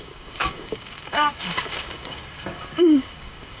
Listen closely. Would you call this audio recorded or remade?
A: remade